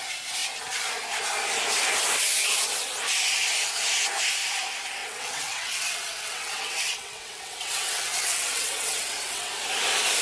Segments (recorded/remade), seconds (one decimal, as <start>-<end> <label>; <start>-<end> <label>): 0.0-5.0 recorded; 5.0-9.5 remade; 9.5-10.2 recorded